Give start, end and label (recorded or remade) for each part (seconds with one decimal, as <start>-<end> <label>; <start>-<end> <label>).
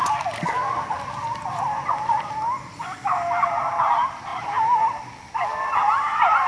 0.0-6.5 recorded